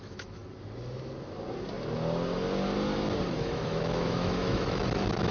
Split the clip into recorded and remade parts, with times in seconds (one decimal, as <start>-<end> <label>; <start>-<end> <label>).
0.0-0.4 remade; 0.4-3.3 recorded; 3.3-5.3 remade